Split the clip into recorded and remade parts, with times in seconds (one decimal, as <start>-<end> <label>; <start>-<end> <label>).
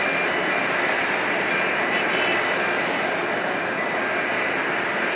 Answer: 0.0-5.2 recorded